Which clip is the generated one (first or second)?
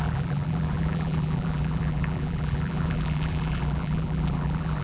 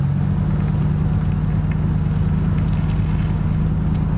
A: first